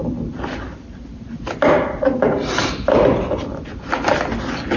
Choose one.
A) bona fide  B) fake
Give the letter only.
A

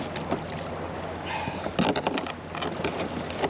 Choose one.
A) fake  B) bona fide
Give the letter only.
B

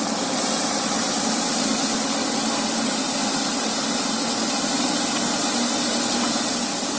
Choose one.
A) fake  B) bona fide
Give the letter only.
B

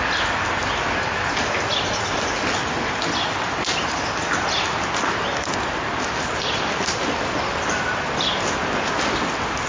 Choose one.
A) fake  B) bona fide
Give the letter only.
B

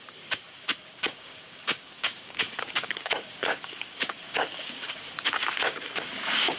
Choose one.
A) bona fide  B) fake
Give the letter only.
B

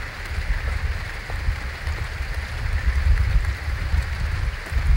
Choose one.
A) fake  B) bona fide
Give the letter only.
B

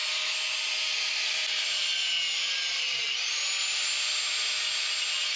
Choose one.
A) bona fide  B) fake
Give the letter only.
A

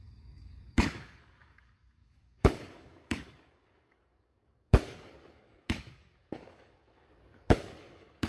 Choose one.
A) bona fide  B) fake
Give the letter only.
B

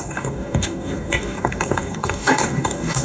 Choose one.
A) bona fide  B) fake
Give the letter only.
B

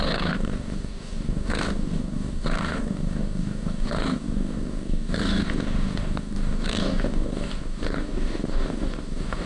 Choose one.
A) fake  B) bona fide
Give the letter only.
A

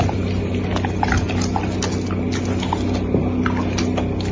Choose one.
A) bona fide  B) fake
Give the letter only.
A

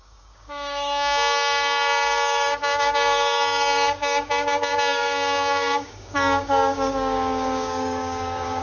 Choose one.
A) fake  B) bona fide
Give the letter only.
A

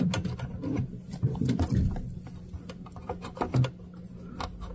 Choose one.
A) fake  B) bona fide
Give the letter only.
B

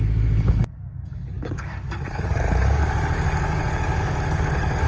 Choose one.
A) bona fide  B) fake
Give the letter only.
B